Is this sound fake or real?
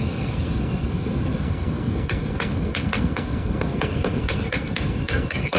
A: fake